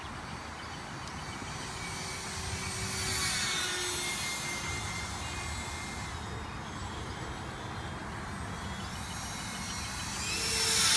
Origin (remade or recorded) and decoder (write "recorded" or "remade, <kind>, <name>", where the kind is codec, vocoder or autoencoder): recorded